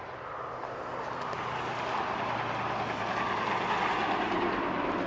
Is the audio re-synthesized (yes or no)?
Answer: no